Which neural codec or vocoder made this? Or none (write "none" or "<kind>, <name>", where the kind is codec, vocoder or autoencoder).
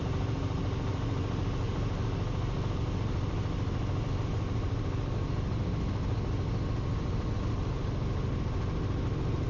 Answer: none